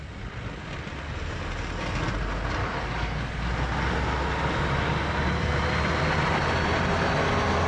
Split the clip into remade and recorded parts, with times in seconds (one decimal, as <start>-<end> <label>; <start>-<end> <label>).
0.0-2.6 recorded; 2.6-3.4 remade; 3.4-7.7 recorded

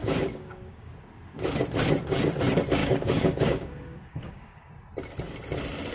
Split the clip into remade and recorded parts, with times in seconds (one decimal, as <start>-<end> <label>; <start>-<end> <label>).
0.0-0.9 remade; 0.9-2.8 recorded; 2.8-4.7 remade; 4.7-5.9 recorded

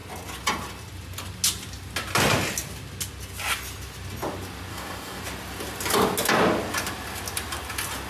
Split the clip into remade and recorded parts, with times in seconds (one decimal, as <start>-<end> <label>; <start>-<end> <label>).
0.0-4.7 recorded; 4.7-5.2 remade; 5.2-8.1 recorded